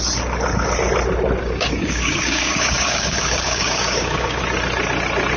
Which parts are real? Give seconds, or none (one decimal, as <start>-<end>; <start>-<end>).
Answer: 0.0-1.4; 4.4-5.4